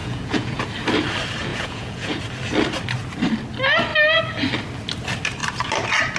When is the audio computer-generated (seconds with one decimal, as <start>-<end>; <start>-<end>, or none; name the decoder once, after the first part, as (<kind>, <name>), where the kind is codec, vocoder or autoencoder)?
0.0-0.6 (vocoder, Vocos); 1.5-2.2